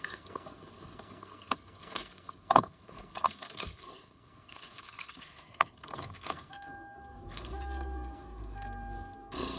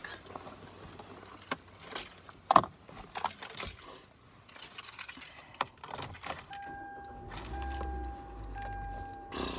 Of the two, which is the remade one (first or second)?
first